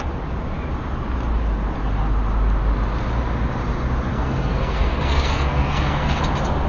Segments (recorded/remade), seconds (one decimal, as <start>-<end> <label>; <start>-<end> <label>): 0.0-4.1 recorded; 4.1-6.2 remade; 6.2-6.7 recorded